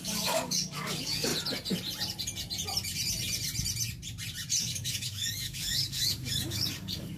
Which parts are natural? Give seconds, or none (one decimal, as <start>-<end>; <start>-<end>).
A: 1.3-4.6